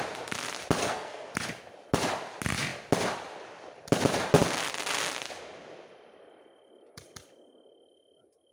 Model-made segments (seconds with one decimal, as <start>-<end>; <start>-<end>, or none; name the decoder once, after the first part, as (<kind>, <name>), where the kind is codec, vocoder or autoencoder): 0.8-1.3 (codec, SNAC)